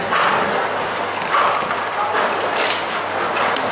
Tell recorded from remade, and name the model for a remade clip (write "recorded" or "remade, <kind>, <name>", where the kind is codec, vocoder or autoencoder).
recorded